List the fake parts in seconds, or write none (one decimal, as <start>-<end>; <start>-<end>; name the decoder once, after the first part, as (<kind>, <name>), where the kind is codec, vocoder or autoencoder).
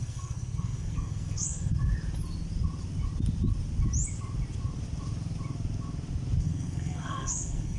0.0-1.7 (codec, SNAC); 6.4-7.8